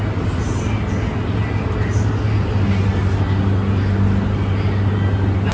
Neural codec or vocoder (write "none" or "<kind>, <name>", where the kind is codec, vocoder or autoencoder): none